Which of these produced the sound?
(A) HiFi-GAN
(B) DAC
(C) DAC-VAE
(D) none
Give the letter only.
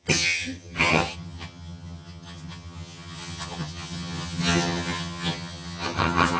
A